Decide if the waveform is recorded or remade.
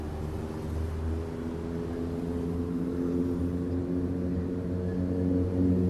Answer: recorded